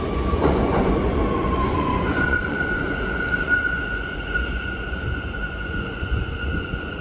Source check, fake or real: fake